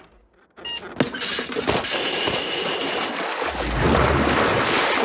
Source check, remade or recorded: recorded